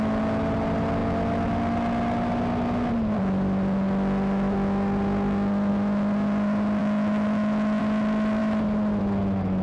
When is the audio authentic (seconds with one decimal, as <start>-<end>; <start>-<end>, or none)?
0.0-6.8; 7.8-9.6